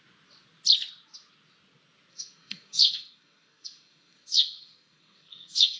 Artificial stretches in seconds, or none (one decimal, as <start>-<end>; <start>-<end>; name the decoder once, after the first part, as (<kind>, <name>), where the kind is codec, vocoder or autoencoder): 2.1-5.8 (codec, SNAC)